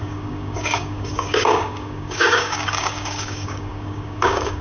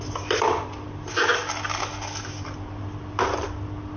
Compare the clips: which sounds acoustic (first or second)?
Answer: second